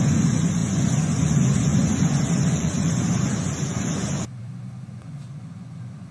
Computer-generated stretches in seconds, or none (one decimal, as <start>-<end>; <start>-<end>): 0.0-6.1